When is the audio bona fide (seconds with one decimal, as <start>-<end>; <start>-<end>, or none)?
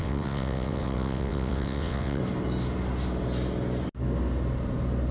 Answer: 2.2-5.1